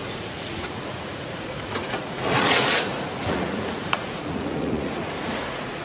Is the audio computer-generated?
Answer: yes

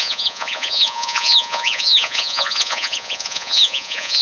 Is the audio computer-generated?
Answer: yes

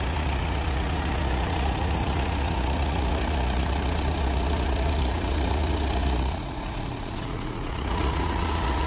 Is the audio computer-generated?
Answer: yes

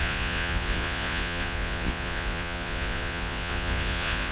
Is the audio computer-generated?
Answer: yes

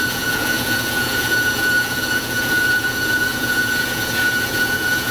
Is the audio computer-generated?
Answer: yes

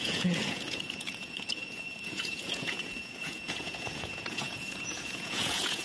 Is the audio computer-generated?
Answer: yes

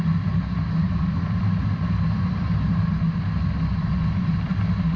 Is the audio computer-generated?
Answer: no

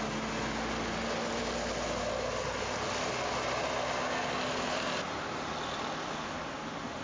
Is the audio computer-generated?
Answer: no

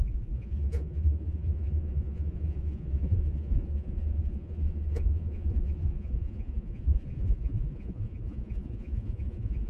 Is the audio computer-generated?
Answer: yes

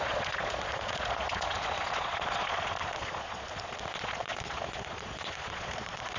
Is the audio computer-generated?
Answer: yes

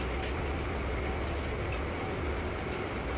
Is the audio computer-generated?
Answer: no